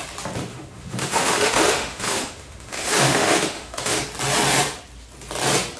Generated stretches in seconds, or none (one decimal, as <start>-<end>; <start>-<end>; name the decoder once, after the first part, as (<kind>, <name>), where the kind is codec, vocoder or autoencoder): 0.5-4.0 (autoencoder, DAC-VAE)